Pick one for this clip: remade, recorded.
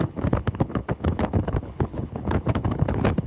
remade